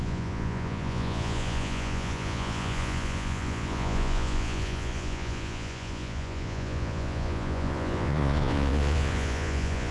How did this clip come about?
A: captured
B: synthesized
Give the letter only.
B